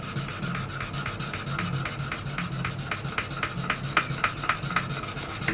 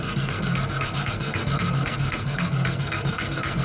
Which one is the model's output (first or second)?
second